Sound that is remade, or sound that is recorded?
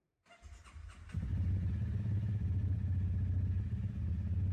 recorded